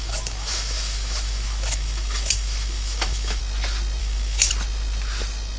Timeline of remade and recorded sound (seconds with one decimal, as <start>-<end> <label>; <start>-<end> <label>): 0.0-3.4 remade; 3.4-4.0 recorded; 4.0-4.5 remade; 4.5-5.6 recorded